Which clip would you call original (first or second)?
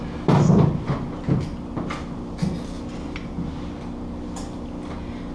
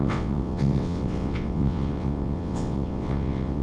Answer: first